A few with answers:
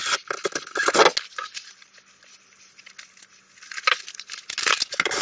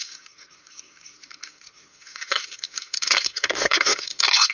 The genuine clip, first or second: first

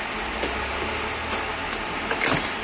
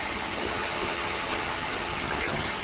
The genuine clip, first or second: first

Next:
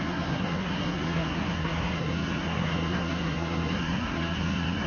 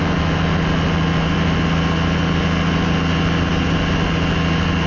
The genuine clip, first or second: second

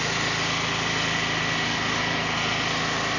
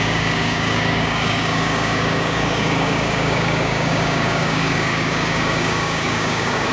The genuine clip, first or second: first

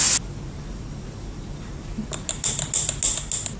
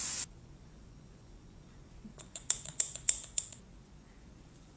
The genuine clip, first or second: first